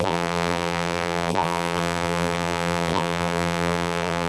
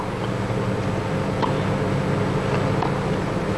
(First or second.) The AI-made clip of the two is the first